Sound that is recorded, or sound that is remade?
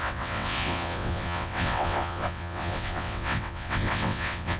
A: remade